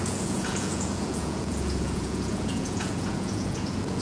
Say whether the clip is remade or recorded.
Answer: remade